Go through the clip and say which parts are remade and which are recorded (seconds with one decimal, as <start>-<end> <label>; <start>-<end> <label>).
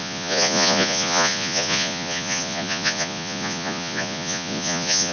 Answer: 0.0-5.1 remade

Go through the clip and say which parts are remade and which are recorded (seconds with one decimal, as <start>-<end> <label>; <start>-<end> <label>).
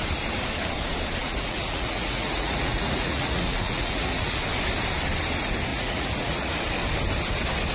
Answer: 0.0-1.2 recorded; 1.2-4.4 remade; 4.4-5.7 recorded; 5.7-6.5 remade; 6.5-7.7 recorded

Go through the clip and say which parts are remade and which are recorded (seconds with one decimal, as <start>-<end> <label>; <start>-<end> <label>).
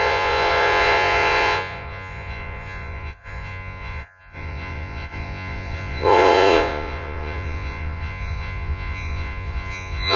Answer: 0.0-10.2 remade